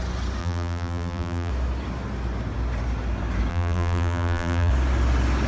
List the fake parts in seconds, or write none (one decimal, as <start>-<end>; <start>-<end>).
0.4-1.5; 3.5-4.7